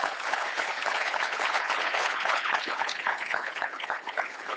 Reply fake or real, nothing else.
fake